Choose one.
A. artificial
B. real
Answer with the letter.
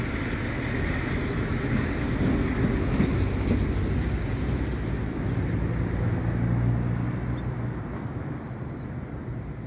B